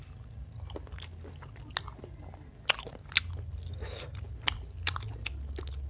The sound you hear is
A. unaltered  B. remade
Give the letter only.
A